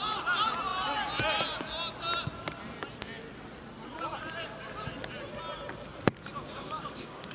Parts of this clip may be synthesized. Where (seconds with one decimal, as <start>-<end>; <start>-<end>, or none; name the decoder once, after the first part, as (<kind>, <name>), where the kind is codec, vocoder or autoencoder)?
6.4-7.3 (codec, DAC)